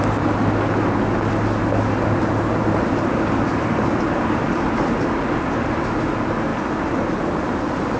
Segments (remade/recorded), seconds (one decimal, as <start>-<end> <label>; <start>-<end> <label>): 0.0-2.6 recorded; 2.6-5.5 remade; 5.5-6.5 recorded; 6.5-7.2 remade; 7.2-8.0 recorded